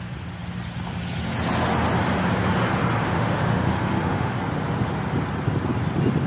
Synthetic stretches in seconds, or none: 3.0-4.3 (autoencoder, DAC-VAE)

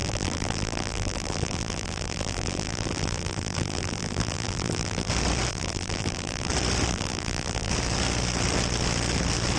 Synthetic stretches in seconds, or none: 0.0-5.1 (vocoder, BigVGAN v2); 5.5-6.5; 6.9-7.7

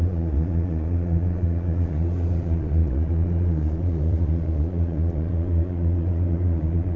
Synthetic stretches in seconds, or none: 0.0-7.0 (vocoder, Vocos)

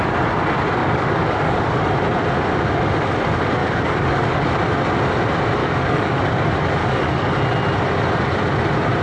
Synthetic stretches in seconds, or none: 0.8-1.8 (codec, DAC); 3.6-4.4; 5.6-6.2; 6.8-7.4

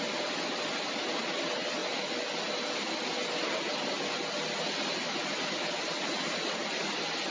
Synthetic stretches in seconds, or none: none

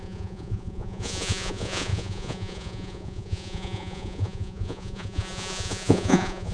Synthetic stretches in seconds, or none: 0.0-6.5 (vocoder, Vocos)